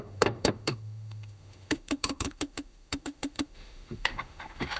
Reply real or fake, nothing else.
fake